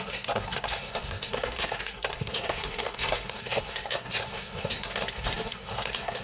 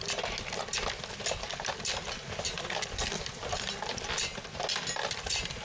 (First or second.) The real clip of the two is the second